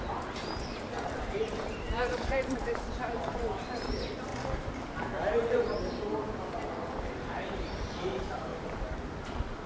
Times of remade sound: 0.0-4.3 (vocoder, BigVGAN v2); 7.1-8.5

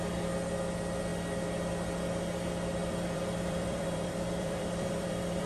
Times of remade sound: 2.8-5.5 (vocoder, BigVGAN v2)

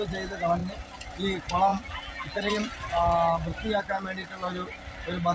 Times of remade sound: 1.7-2.5 (vocoder, BigVGAN v2)

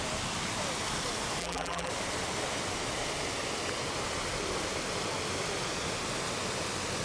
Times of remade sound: 1.4-1.9 (vocoder, BigVGAN v2)

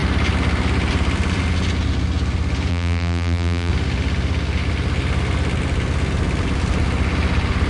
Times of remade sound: 2.7-3.7 (vocoder, BigVGAN v2)

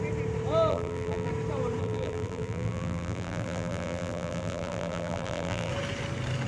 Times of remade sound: 0.7-1.3 (vocoder, BigVGAN v2); 1.8-5.7

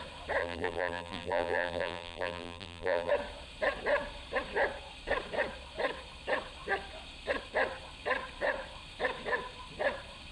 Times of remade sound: 0.4-3.1 (vocoder, BigVGAN v2)

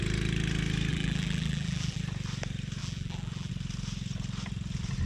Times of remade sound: 0.9-2.0 (vocoder, BigVGAN v2); 2.8-3.5